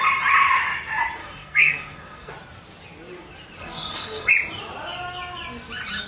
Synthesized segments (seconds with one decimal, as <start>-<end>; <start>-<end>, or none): 1.2-2.3; 3.6-4.3

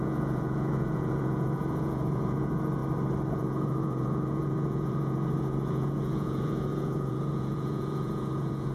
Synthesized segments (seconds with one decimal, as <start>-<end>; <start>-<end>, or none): 0.0-2.8; 3.3-8.7

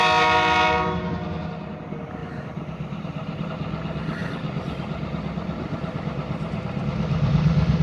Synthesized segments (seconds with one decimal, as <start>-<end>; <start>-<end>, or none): 2.2-3.5; 4.2-7.8